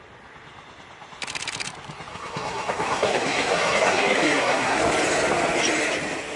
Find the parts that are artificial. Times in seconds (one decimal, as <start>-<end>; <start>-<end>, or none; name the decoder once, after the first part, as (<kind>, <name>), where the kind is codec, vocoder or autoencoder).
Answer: 2.1-4.8 (codec, SNAC)